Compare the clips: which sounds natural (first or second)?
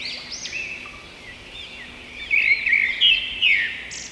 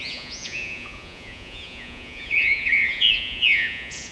first